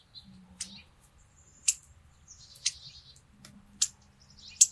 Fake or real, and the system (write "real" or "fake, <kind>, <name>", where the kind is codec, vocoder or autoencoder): real